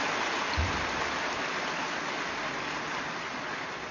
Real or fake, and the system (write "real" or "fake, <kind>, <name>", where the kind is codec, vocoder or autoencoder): real